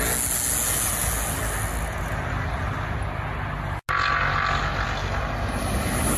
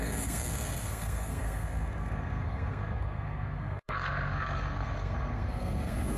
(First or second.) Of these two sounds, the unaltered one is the first